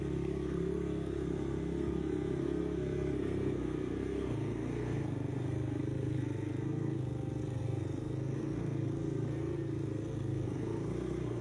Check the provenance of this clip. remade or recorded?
remade